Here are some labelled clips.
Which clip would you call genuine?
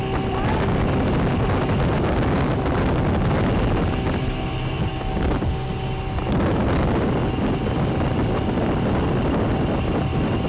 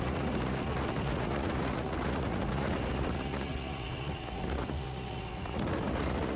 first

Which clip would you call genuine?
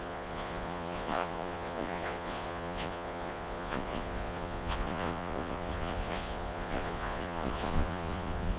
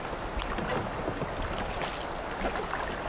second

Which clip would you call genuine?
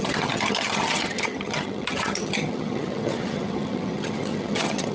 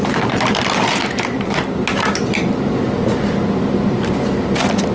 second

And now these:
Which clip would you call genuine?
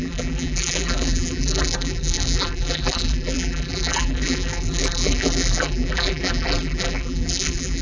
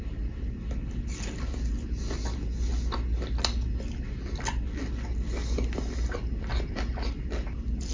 second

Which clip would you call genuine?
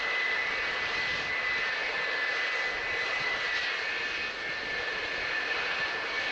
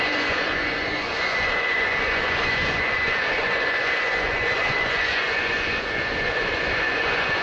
first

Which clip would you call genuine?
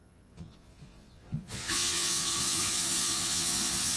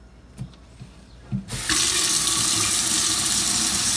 second